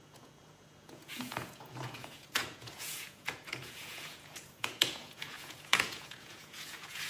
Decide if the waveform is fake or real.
fake